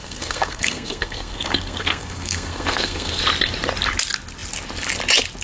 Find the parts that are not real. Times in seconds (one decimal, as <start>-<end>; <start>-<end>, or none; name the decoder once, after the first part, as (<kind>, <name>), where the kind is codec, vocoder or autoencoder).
0.0-3.2 (codec, SNAC)